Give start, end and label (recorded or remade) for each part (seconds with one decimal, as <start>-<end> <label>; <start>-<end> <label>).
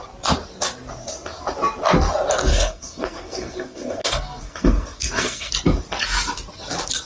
0.0-2.5 recorded; 2.5-5.5 remade; 5.5-7.1 recorded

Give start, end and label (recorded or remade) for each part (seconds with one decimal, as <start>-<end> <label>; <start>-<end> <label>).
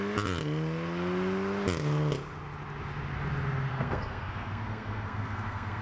0.0-3.7 recorded; 3.7-5.8 remade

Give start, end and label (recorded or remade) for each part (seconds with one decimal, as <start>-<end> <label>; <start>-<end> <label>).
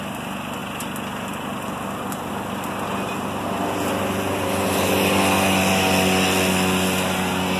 0.0-7.6 recorded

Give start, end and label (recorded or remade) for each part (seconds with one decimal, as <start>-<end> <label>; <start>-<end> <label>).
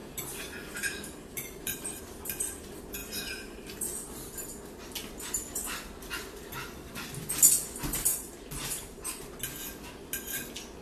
0.0-2.0 remade; 2.0-3.0 recorded; 3.0-3.8 remade; 3.8-8.1 recorded; 8.1-9.2 remade; 9.2-10.8 recorded